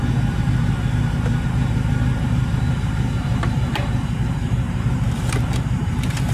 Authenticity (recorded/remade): remade